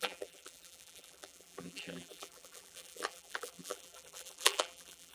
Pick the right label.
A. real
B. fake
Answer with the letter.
B